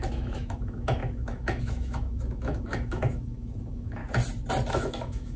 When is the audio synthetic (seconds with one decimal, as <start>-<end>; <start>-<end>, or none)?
0.0-4.0; 4.7-5.4